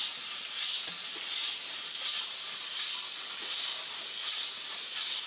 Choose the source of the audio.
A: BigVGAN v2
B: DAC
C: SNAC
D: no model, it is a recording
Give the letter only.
D